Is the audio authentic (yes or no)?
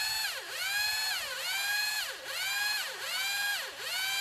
yes